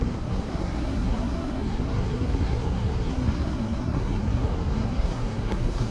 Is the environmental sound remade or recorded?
remade